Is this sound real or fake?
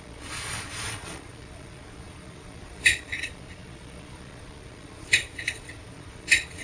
fake